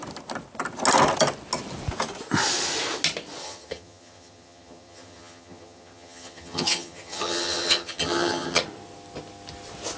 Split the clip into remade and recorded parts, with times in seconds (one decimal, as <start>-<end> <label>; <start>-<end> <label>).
0.0-3.4 recorded; 3.4-8.6 remade; 8.6-10.0 recorded

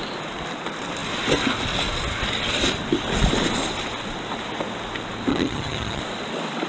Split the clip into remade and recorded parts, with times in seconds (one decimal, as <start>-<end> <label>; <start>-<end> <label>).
0.0-5.3 recorded; 5.3-6.0 remade; 6.0-6.7 recorded